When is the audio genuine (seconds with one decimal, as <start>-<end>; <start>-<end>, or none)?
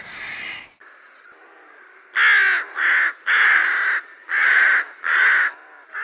0.0-6.0